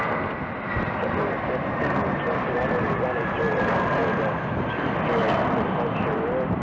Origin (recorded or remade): recorded